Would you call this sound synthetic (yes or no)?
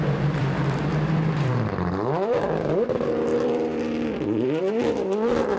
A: yes